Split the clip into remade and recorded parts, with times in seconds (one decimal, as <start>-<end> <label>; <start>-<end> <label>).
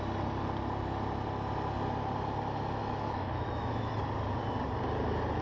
0.0-2.8 recorded; 2.8-4.0 remade; 4.0-5.4 recorded